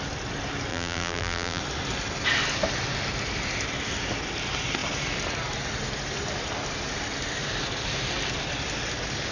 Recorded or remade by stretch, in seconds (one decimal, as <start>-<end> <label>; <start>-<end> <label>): 0.0-0.7 recorded; 0.7-1.6 remade; 1.6-9.3 recorded